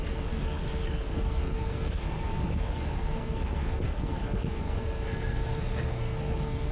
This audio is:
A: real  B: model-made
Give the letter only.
B